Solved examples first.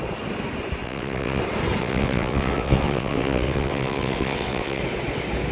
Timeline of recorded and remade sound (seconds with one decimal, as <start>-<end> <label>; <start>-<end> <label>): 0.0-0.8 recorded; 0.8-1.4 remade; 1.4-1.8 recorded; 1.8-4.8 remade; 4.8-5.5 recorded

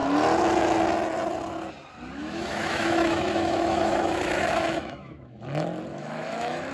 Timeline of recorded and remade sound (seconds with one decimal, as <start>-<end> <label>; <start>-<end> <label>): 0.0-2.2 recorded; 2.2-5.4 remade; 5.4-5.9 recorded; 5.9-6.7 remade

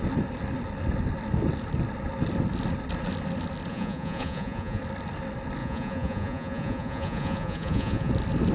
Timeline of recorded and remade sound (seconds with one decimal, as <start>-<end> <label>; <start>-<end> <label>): 0.0-3.7 recorded; 3.7-4.8 remade; 4.8-5.6 recorded; 5.6-8.1 remade; 8.1-8.5 recorded

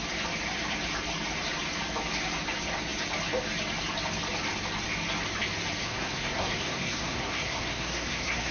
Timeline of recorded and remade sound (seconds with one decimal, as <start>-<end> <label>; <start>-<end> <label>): 0.0-5.8 recorded; 5.8-8.5 remade